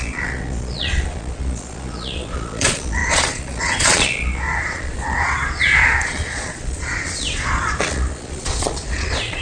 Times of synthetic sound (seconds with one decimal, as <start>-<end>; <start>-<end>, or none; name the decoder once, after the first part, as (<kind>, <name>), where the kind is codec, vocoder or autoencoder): 0.0-9.4 (vocoder, Vocos)